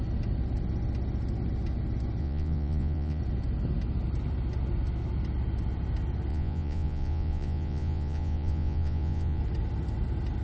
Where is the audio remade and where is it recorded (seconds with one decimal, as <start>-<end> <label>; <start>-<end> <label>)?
0.0-2.2 recorded; 2.2-3.2 remade; 3.2-6.3 recorded; 6.3-9.4 remade; 9.4-10.4 recorded